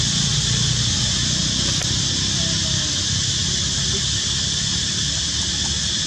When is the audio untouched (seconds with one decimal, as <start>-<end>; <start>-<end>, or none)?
0.0-6.1